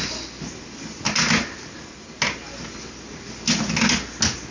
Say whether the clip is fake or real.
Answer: real